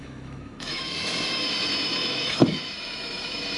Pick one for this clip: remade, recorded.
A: remade